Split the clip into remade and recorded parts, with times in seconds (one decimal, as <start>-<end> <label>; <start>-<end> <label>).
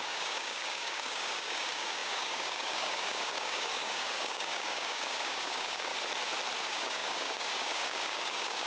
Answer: 0.0-5.9 remade; 5.9-6.6 recorded; 6.6-8.7 remade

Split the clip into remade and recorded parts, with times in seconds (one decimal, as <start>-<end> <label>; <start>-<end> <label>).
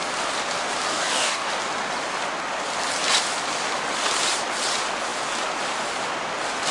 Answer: 0.0-0.9 recorded; 0.9-1.5 remade; 1.5-6.7 recorded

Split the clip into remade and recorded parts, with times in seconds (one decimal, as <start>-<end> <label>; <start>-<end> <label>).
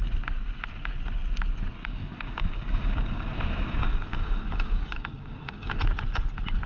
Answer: 0.0-1.8 recorded; 1.8-5.8 remade; 5.8-6.7 recorded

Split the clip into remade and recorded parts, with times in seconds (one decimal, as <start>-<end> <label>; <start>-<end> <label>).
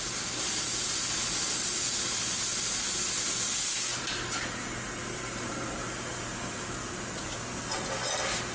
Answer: 0.0-8.5 recorded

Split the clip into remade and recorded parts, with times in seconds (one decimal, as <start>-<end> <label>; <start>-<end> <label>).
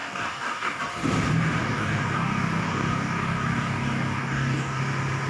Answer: 0.0-0.8 remade; 0.8-1.6 recorded; 1.6-4.8 remade; 4.8-5.3 recorded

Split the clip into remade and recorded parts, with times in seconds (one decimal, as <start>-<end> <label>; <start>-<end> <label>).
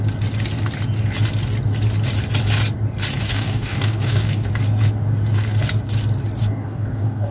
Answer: 0.0-3.2 recorded; 3.2-4.5 remade; 4.5-6.4 recorded; 6.4-7.3 remade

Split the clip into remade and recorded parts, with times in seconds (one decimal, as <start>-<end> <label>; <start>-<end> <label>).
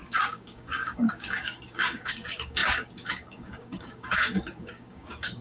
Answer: 0.0-5.4 remade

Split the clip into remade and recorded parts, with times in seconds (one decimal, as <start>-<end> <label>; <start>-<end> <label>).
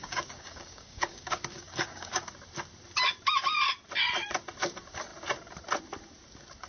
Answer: 0.0-2.2 remade; 2.2-6.7 recorded